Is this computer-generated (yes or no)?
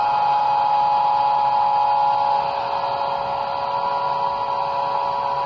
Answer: no